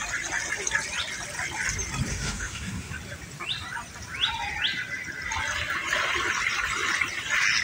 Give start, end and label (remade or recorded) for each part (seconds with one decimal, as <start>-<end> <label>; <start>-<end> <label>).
0.0-2.1 recorded; 2.1-2.9 remade; 2.9-7.6 recorded